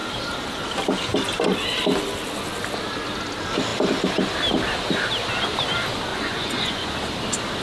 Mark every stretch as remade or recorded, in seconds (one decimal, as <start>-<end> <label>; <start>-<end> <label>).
0.0-6.1 recorded; 6.1-6.9 remade; 6.9-7.6 recorded

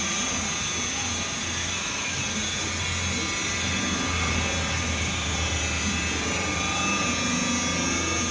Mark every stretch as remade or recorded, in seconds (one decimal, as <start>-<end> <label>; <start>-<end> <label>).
0.0-1.6 recorded; 1.6-2.2 remade; 2.2-8.3 recorded